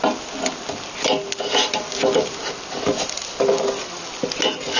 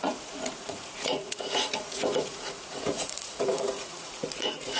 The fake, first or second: second